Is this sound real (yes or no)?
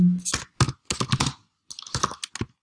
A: yes